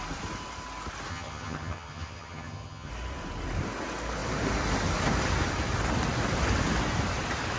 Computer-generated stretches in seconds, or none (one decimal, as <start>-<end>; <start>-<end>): 1.1-2.9